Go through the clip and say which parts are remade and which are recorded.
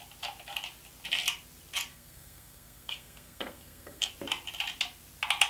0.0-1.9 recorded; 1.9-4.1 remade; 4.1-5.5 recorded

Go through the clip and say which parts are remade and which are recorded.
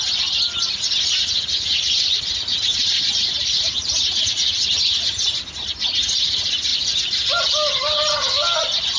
0.0-9.0 recorded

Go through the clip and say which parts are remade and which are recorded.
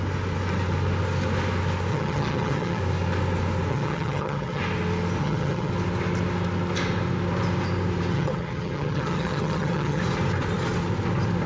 0.0-1.9 recorded; 1.9-2.8 remade; 2.8-3.7 recorded; 3.7-4.6 remade; 4.6-5.2 recorded; 5.2-5.7 remade; 5.7-8.1 recorded; 8.1-10.0 remade; 10.0-11.5 recorded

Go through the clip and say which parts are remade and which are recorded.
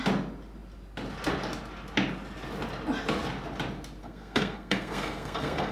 0.0-4.0 recorded; 4.0-5.7 remade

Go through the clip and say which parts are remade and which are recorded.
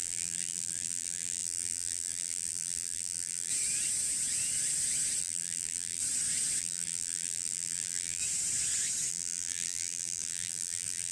0.0-3.5 remade; 3.5-5.2 recorded; 5.2-6.0 remade; 6.0-6.6 recorded; 6.6-8.2 remade; 8.2-9.1 recorded; 9.1-11.1 remade